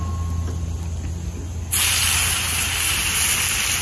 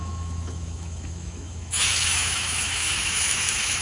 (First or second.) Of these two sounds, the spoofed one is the second